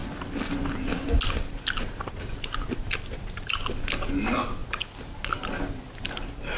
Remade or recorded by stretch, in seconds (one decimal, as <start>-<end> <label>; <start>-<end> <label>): 0.0-6.6 recorded